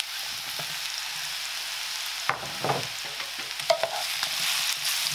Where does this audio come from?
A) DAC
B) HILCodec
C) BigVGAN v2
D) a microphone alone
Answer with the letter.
D